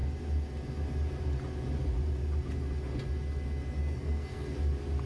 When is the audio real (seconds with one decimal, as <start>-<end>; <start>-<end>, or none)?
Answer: 0.0-3.8; 4.6-5.1